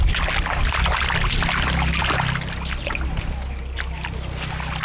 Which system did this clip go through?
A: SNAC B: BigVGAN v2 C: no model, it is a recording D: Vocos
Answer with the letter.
C